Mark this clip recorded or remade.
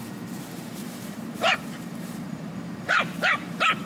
remade